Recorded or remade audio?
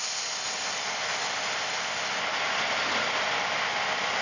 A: recorded